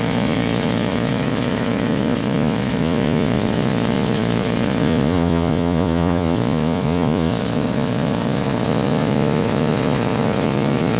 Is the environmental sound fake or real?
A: fake